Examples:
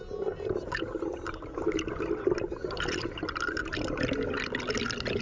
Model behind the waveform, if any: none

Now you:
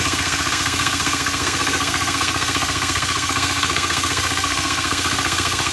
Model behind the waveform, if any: codec, SNAC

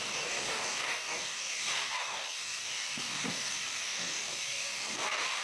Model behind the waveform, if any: codec, DAC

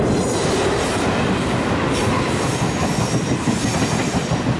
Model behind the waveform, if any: none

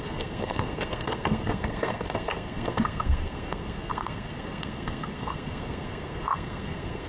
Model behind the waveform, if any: codec, SNAC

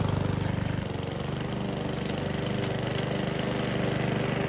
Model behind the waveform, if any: none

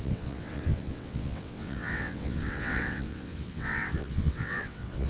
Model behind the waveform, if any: vocoder, WaveNeXt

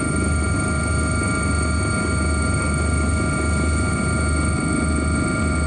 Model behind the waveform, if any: none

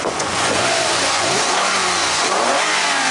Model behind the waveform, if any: vocoder, Vocos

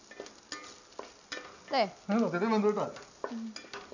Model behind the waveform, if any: none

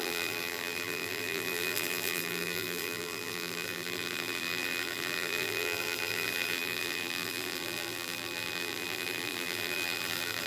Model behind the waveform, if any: vocoder, BigVGAN v2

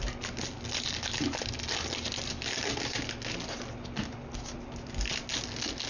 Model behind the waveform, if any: none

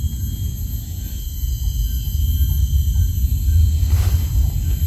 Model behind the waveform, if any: none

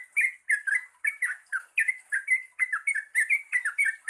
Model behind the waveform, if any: none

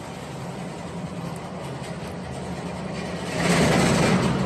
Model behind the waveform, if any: none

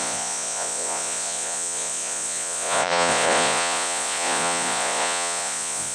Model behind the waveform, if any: vocoder, Vocos